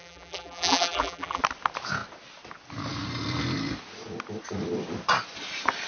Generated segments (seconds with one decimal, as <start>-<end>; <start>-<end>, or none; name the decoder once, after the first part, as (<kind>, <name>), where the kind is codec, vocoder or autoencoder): 0.0-1.4 (vocoder, BigVGAN v2)